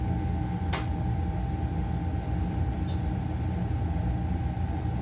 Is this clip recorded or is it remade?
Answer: recorded